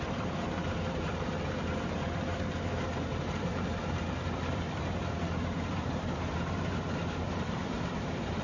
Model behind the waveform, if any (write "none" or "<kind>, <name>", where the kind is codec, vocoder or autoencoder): vocoder, BigVGAN v2